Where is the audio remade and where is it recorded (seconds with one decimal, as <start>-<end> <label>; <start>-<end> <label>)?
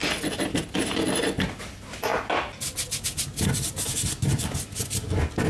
0.0-5.5 recorded